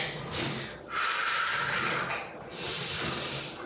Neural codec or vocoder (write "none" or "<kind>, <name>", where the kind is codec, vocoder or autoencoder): none